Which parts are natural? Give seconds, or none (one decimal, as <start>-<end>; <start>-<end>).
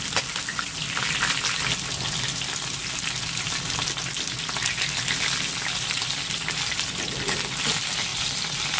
0.0-8.8